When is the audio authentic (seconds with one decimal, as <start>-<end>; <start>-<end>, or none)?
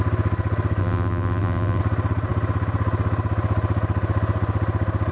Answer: 0.0-0.8; 1.8-5.1